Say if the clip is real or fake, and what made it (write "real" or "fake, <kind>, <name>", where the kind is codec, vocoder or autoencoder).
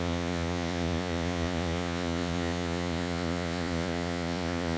fake, vocoder, Vocos